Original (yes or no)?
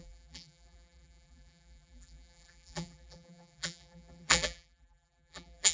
no